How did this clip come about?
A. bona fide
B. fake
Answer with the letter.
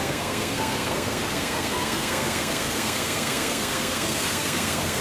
B